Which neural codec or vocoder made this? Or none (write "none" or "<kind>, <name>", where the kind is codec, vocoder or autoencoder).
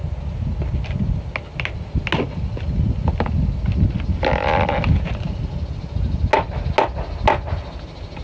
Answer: none